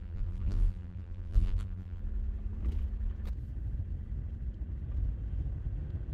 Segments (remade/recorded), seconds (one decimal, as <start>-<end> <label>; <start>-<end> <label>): 0.0-2.0 remade; 2.0-6.1 recorded